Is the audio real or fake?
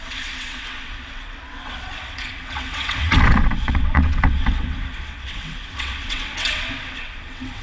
fake